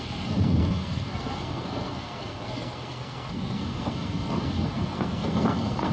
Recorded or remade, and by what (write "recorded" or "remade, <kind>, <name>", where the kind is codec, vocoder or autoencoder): remade, codec, SNAC